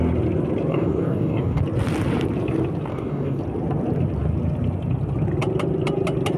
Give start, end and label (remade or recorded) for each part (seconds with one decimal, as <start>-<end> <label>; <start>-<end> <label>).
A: 0.0-0.7 recorded; 0.7-1.6 remade; 1.6-2.9 recorded; 2.9-3.4 remade; 3.4-6.4 recorded